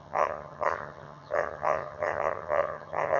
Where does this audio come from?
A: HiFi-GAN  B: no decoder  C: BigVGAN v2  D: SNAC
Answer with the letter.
A